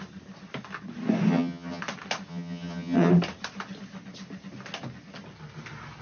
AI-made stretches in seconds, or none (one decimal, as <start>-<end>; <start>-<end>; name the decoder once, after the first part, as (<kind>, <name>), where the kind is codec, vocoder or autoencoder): 1.3-1.8 (vocoder, HiFi-GAN); 2.3-3.1